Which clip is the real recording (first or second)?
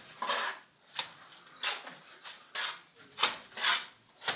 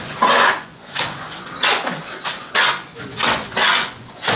first